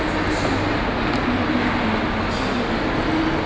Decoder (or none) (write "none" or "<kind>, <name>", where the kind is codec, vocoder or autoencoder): none